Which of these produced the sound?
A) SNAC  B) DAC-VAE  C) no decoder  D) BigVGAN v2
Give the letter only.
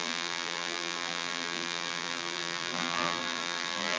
D